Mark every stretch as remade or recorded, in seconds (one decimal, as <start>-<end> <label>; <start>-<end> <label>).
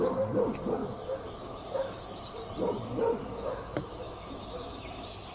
0.0-0.8 recorded; 0.8-2.2 remade; 2.2-3.1 recorded; 3.1-5.3 remade